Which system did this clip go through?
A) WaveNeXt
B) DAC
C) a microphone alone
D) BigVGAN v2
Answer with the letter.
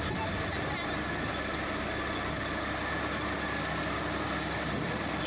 C